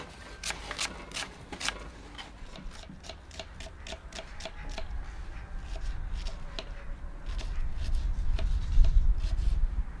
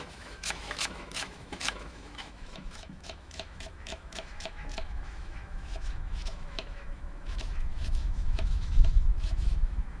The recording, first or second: first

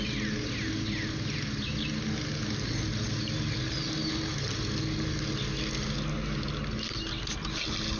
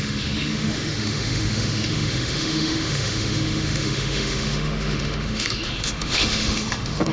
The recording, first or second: first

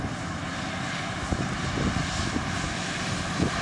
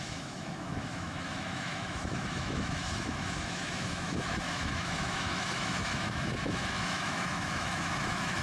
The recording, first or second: first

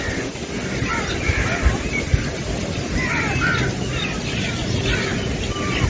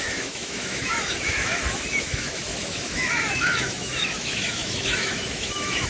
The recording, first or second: first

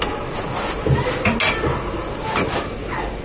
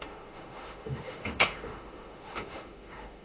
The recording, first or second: first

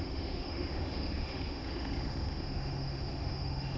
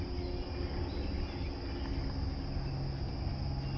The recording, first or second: second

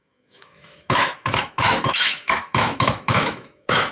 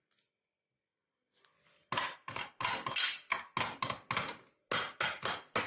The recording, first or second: second